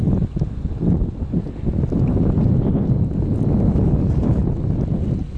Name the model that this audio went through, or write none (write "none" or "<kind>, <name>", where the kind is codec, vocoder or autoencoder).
none